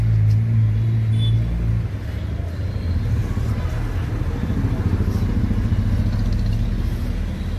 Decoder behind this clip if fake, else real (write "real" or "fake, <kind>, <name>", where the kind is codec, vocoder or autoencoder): real